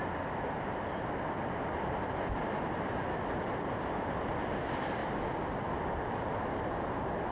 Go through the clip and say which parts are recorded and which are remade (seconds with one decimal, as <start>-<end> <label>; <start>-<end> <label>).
0.0-7.3 recorded